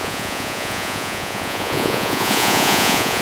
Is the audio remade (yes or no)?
yes